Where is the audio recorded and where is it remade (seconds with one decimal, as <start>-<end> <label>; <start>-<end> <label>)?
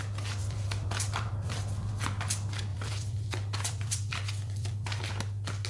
0.0-0.4 recorded; 0.4-1.9 remade; 1.9-2.7 recorded; 2.7-5.1 remade; 5.1-5.7 recorded